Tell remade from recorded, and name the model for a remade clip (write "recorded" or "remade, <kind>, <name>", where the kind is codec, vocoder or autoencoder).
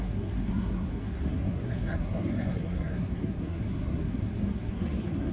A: remade, codec, SNAC